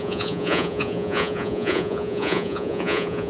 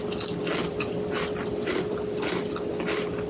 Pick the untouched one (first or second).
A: second